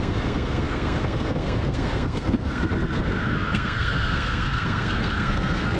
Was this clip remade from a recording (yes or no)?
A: yes